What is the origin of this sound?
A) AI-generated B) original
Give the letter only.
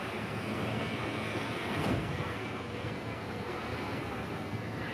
A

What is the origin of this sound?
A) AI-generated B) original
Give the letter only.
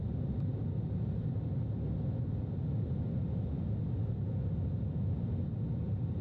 B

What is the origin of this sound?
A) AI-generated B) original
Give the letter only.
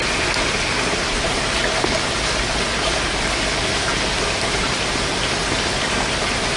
B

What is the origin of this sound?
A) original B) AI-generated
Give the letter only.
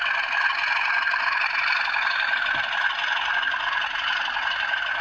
A